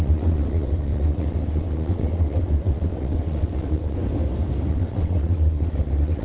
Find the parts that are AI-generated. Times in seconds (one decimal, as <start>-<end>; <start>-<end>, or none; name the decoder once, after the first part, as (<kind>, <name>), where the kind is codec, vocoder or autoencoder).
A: 0.0-4.0 (vocoder, WaveNeXt); 4.7-6.2